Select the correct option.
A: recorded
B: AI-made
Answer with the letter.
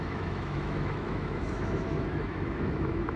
B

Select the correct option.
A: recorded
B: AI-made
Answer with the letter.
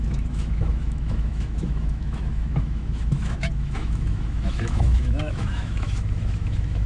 B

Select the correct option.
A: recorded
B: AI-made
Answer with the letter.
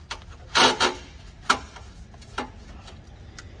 A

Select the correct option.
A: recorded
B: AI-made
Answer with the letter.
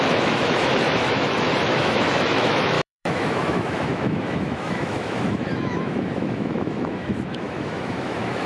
B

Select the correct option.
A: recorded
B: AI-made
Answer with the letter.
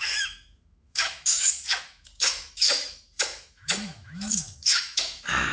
B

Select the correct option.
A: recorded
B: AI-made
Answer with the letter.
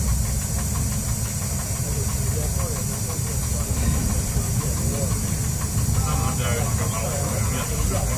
A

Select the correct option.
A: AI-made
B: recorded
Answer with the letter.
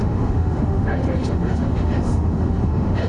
A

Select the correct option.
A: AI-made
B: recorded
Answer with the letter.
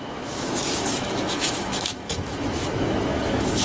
A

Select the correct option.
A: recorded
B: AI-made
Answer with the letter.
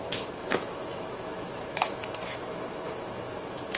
B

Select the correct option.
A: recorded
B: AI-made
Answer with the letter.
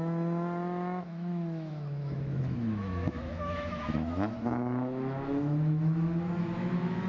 B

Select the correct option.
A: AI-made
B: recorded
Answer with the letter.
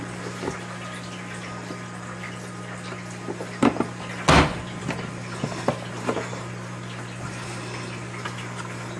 B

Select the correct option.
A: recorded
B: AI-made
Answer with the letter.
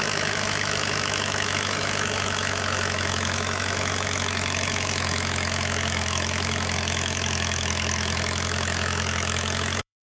B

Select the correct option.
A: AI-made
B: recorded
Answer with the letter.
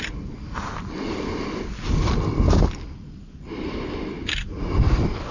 B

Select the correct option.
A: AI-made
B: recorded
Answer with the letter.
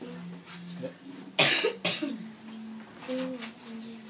B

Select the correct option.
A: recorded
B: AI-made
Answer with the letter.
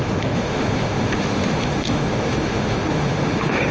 B